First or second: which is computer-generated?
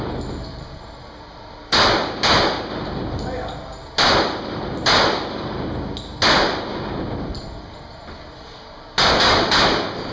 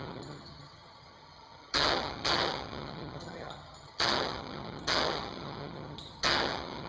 second